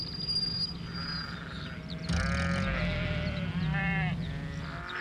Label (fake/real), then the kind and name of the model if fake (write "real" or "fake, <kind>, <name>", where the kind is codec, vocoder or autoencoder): real